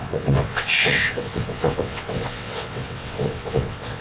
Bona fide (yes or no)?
no